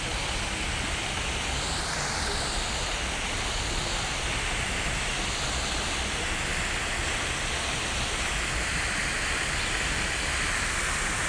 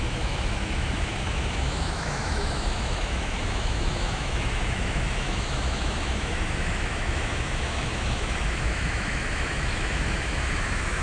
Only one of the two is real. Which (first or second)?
first